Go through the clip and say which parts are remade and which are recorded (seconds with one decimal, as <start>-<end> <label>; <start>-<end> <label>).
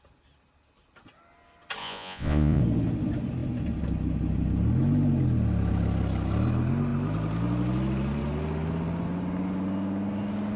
0.0-1.8 recorded; 1.8-2.6 remade; 2.6-10.6 recorded